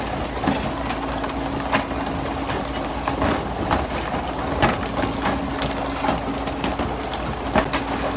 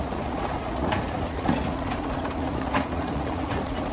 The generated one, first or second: second